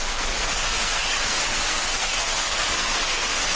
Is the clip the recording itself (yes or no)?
no